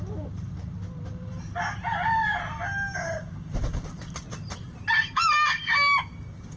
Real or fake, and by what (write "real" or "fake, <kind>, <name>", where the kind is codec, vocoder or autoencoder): real